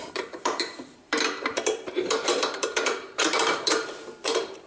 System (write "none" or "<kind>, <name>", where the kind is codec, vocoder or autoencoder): vocoder, BigVGAN v2